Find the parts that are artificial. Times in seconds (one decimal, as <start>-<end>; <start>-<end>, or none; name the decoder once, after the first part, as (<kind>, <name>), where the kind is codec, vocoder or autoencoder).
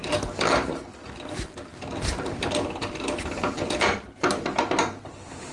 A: none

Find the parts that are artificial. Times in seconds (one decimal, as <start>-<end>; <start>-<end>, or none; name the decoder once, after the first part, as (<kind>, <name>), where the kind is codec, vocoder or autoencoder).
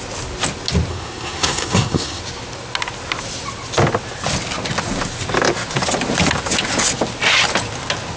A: 0.9-2.2 (codec, SNAC)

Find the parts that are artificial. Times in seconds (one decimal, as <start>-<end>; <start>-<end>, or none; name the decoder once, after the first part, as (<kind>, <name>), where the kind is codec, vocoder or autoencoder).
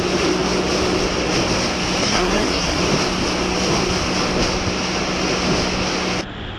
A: 2.0-2.8 (codec, SNAC)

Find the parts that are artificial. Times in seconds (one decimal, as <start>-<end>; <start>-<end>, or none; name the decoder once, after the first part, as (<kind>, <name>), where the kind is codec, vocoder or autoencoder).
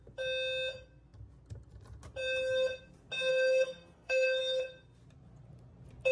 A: 3.3-4.4 (codec, SNAC)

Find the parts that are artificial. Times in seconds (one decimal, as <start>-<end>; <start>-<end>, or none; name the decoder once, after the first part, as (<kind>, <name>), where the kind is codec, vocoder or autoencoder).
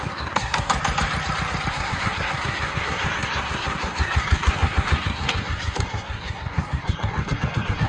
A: 0.0-0.7 (codec, SNAC); 1.7-7.9